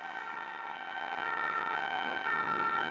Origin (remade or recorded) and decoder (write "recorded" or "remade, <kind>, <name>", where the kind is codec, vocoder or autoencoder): remade, vocoder, HiFi-GAN